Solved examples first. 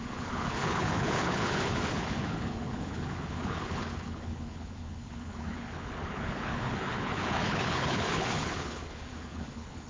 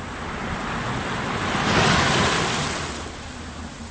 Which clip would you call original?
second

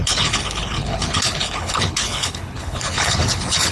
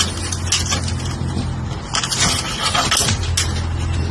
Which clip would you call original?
second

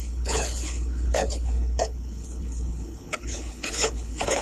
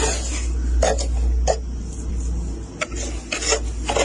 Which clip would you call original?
second